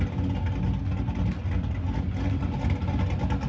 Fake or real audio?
real